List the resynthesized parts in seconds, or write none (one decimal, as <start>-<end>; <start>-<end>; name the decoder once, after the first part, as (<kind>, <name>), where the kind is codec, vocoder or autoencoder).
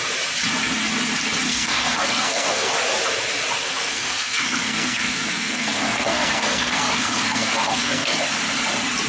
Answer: 1.5-2.7 (codec, SNAC); 3.6-8.2